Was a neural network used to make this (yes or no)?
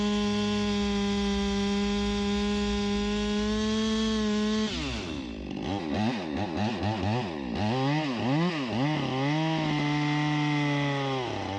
no